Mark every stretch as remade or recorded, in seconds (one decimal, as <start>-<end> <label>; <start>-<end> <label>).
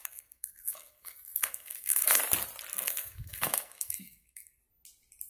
0.0-2.2 remade; 2.2-2.7 recorded; 2.7-4.6 remade; 4.6-5.3 recorded